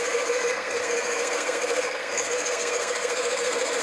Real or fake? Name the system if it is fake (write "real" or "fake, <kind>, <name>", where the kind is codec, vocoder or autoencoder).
fake, codec, SNAC